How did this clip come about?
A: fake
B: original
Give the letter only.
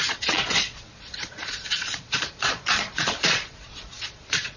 A